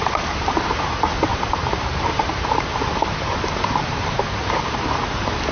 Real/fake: fake